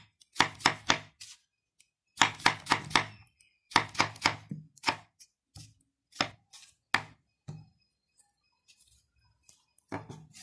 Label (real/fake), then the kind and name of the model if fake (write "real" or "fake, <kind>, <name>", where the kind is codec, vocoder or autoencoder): real